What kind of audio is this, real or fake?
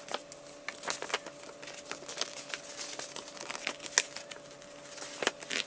real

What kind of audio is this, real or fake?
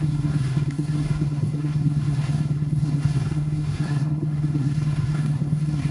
fake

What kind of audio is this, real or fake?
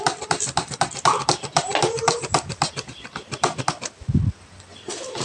real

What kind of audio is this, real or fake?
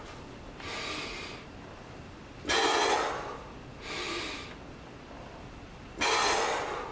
real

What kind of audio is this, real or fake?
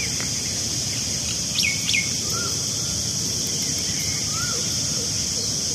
real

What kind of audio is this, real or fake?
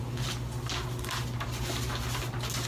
real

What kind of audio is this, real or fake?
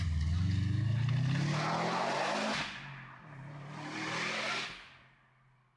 real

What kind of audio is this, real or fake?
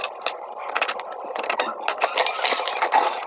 real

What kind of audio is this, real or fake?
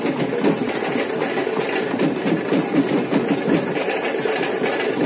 real